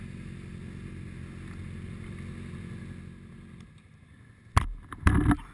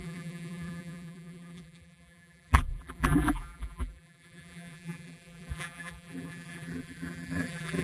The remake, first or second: second